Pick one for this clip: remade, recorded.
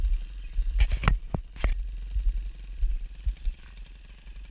recorded